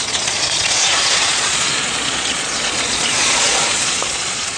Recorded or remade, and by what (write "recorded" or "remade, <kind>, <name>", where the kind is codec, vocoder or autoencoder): remade, vocoder, Vocos